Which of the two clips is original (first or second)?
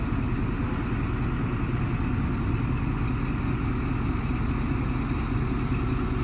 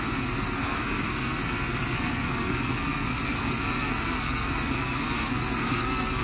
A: first